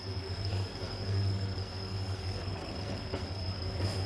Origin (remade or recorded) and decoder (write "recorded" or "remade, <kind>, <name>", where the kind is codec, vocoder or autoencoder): remade, codec, SNAC